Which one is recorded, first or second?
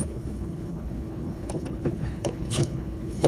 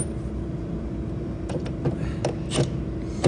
second